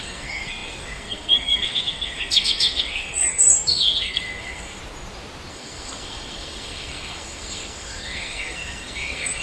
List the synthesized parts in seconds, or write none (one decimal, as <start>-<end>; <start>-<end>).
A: 0.0-4.8; 5.5-9.4